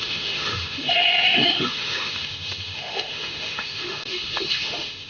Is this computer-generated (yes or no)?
yes